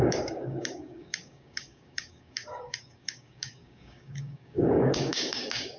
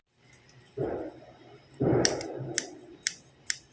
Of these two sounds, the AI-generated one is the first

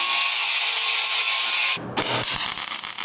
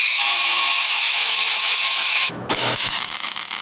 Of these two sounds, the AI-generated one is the second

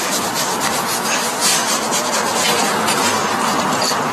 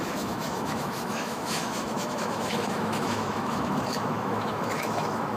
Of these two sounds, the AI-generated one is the second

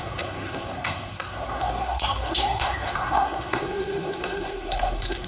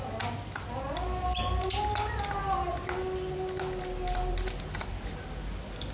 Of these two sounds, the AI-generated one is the first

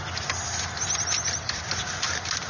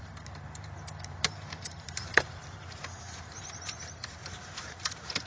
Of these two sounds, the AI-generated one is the second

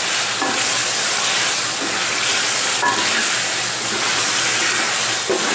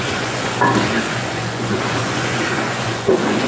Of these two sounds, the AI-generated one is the second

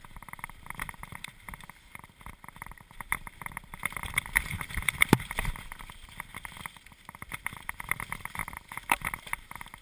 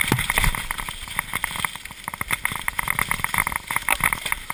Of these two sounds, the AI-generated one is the first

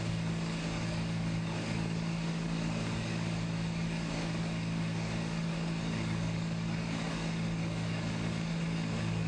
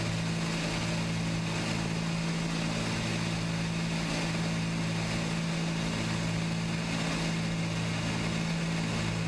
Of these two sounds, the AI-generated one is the first